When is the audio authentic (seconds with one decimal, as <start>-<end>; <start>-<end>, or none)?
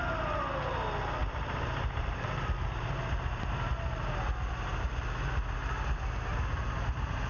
0.0-1.2; 3.7-7.3